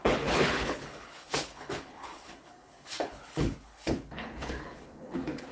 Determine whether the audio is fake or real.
fake